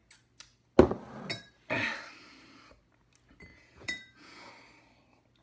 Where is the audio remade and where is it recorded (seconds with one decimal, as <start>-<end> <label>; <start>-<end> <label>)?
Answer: 0.0-3.5 recorded; 3.5-4.5 remade; 4.5-5.4 recorded